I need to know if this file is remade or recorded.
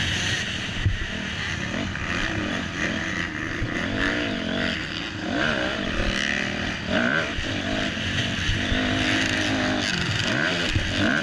recorded